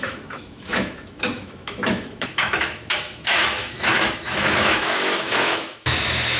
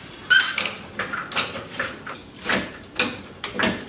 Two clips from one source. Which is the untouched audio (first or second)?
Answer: second